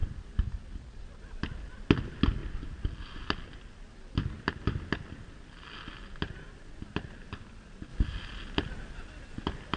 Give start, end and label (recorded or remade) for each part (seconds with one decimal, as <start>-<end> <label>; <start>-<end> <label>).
0.0-1.2 remade; 1.2-9.8 recorded

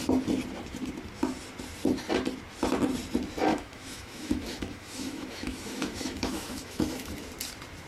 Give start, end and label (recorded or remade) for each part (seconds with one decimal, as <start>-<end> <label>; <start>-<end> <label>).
0.0-3.5 recorded; 3.5-7.1 remade; 7.1-7.9 recorded

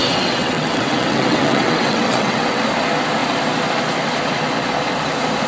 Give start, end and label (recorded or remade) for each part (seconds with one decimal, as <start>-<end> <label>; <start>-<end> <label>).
0.0-2.6 remade; 2.6-5.5 recorded

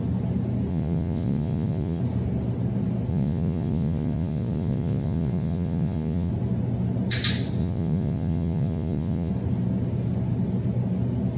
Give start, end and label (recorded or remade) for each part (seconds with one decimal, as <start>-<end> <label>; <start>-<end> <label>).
0.0-0.7 recorded; 0.7-2.0 remade; 2.0-3.1 recorded; 3.1-6.3 remade; 6.3-7.6 recorded; 7.6-9.3 remade; 9.3-11.4 recorded

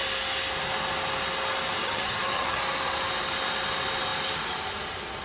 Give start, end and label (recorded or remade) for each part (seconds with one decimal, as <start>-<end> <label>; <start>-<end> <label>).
0.0-1.8 recorded; 1.8-2.6 remade; 2.6-5.2 recorded

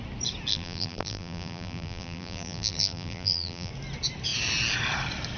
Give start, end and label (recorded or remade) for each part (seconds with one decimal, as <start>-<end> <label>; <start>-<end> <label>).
0.0-0.5 recorded; 0.5-3.7 remade; 3.7-5.4 recorded